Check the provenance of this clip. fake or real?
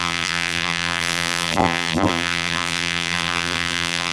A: fake